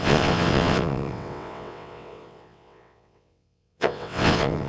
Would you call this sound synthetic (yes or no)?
yes